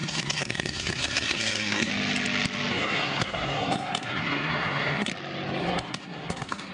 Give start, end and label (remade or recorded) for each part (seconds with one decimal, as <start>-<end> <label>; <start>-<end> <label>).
0.0-1.9 remade; 1.9-2.7 recorded; 2.7-5.1 remade; 5.1-5.6 recorded; 5.6-6.7 remade